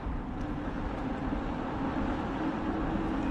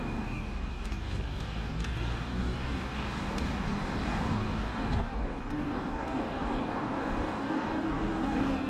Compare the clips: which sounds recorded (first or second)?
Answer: first